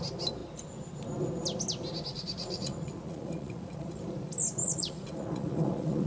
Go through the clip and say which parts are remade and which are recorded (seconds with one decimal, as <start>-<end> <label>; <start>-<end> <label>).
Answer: 0.0-2.1 recorded; 2.1-4.0 remade; 4.0-4.6 recorded; 4.6-6.1 remade